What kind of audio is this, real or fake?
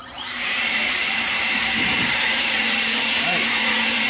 fake